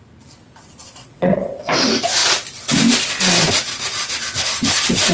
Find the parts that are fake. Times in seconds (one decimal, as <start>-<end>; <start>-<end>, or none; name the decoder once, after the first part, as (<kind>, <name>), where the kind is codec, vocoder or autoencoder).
1.0-1.7 (vocoder, WaveNeXt)